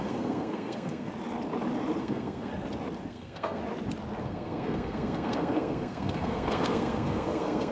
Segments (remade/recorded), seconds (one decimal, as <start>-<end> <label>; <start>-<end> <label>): 0.0-1.1 remade; 1.1-2.0 recorded; 2.0-2.5 remade; 2.5-3.1 recorded; 3.1-3.6 remade; 3.6-4.2 recorded; 4.2-7.7 remade